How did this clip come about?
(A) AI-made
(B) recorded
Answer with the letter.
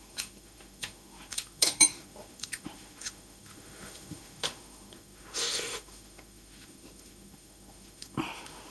A